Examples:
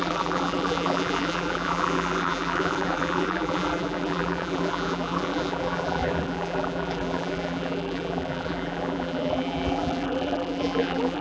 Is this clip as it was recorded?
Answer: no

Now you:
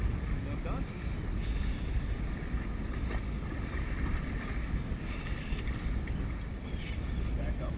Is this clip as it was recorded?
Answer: yes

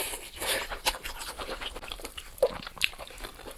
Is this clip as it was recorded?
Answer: no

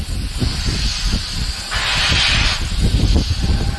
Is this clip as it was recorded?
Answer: yes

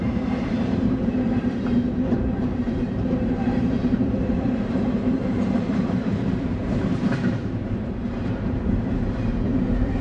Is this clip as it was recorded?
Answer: no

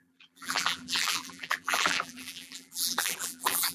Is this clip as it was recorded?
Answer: no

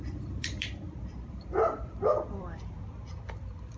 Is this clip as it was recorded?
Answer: no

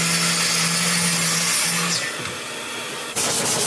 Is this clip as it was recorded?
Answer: yes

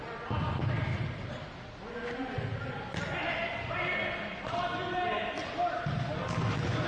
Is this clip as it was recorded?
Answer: yes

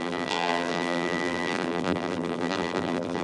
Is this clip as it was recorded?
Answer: no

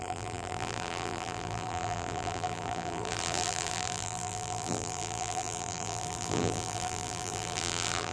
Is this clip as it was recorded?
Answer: no